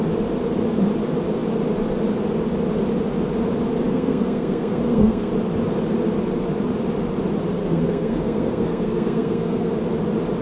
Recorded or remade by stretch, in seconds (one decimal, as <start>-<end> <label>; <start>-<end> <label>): 0.0-3.9 recorded; 3.9-5.3 remade; 5.3-7.6 recorded; 7.6-9.7 remade; 9.7-10.4 recorded